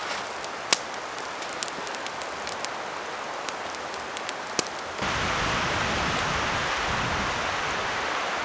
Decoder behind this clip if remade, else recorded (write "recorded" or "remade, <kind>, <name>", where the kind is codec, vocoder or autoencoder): recorded